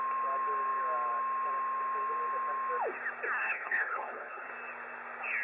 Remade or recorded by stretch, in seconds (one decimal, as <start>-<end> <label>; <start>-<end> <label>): 0.0-3.4 recorded; 3.4-4.5 remade; 4.5-5.4 recorded

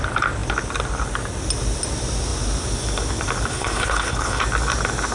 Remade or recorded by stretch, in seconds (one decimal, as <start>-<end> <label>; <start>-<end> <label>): 0.0-3.5 recorded; 3.5-4.4 remade; 4.4-5.1 recorded

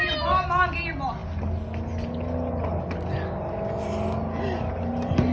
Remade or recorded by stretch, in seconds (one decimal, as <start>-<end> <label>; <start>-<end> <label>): 0.0-5.3 recorded